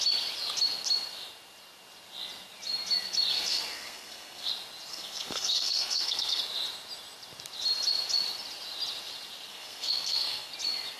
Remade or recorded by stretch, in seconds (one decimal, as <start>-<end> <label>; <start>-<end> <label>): 0.0-3.3 recorded; 3.3-4.5 remade; 4.5-4.9 recorded; 4.9-6.4 remade; 6.4-9.5 recorded; 9.5-10.5 remade; 10.5-11.0 recorded